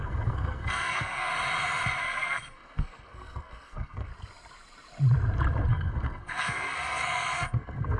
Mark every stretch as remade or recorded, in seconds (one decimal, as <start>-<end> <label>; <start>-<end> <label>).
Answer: 0.0-1.3 remade; 1.3-2.0 recorded; 2.0-4.1 remade; 4.1-5.7 recorded; 5.7-8.0 remade